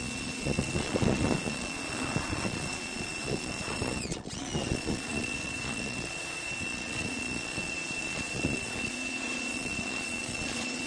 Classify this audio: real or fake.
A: fake